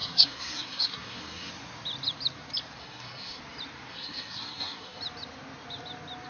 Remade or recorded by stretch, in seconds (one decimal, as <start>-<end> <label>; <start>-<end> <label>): 0.0-1.5 remade; 1.5-2.8 recorded; 2.8-3.4 remade; 3.4-3.9 recorded; 3.9-5.0 remade; 5.0-6.3 recorded